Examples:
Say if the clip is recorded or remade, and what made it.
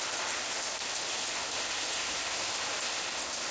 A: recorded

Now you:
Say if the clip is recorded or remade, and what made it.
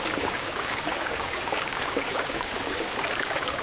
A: remade, codec, DAC